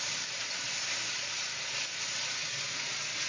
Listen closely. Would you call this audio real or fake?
real